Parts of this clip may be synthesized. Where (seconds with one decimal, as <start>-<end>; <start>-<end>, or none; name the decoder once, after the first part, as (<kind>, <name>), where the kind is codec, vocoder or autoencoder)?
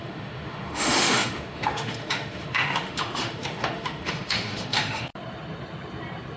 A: 0.0-5.1 (autoencoder, DAC-VAE)